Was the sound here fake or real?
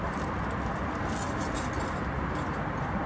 real